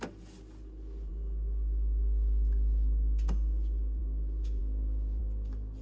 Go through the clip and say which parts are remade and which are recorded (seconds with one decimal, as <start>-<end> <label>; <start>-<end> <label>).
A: 0.0-5.8 recorded